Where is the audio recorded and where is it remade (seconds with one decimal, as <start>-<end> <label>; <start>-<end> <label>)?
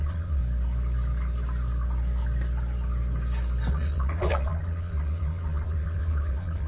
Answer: 0.0-0.4 remade; 0.4-3.7 recorded; 3.7-6.7 remade